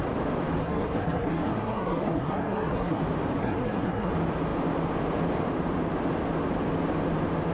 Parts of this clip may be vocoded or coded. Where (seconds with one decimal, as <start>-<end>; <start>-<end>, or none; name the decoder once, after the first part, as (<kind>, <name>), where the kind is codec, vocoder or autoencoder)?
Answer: 0.6-3.0 (codec, SNAC); 3.4-4.1